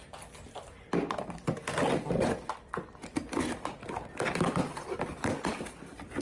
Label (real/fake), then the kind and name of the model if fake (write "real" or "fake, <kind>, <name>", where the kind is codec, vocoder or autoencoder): fake, vocoder, BigVGAN v2